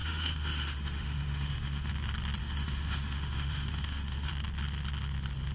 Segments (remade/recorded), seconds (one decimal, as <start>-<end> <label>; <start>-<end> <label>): 0.0-1.9 remade; 1.9-2.4 recorded; 2.4-4.3 remade; 4.3-5.5 recorded